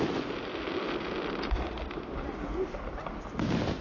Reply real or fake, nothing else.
real